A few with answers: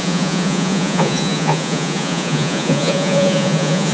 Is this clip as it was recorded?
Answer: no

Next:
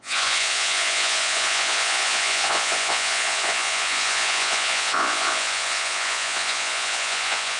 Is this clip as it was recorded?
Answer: no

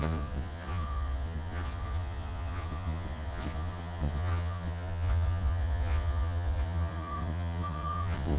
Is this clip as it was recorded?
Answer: no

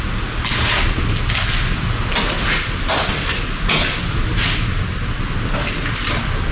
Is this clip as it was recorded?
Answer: yes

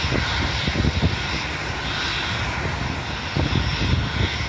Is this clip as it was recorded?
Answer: yes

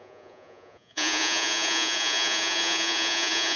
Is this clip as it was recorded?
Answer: no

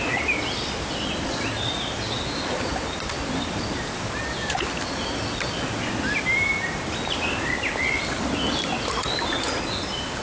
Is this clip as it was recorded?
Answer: yes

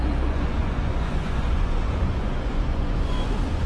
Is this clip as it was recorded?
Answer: no